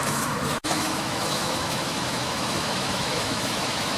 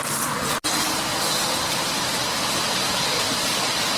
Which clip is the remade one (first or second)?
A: first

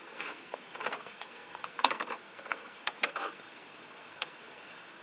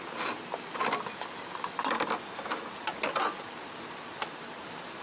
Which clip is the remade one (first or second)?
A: first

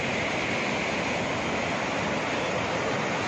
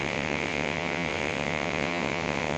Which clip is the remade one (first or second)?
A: second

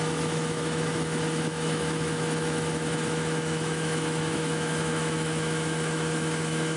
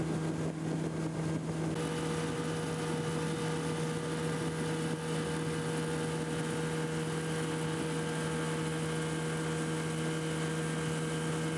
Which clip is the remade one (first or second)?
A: first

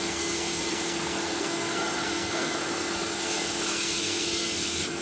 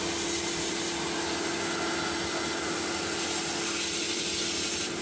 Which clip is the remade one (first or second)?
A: first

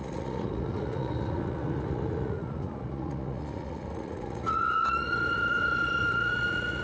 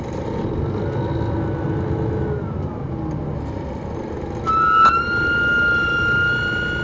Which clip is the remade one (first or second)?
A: first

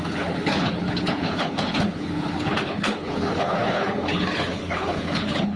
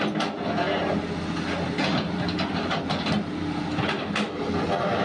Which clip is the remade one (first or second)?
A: first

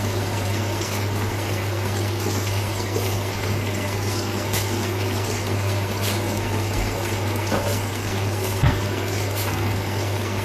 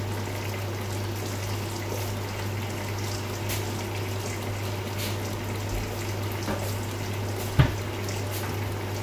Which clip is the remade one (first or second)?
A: first